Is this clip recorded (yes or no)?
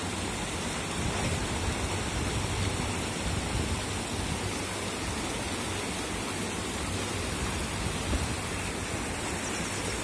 yes